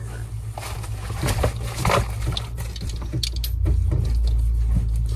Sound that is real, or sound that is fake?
real